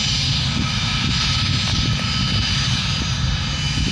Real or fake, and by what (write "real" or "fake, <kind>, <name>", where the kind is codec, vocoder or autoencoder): real